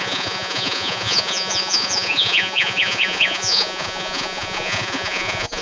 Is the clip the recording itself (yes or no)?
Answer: no